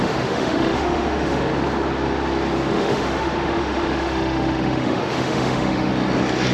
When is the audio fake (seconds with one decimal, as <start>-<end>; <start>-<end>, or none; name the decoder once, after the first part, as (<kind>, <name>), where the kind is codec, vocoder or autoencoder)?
0.0-1.5 (autoencoder, DAC-VAE); 2.7-5.9